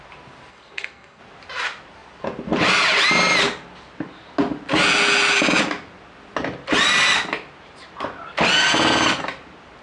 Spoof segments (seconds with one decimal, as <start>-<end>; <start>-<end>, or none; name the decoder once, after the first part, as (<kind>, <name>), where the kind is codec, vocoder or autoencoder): 0.5-1.2 (codec, SNAC)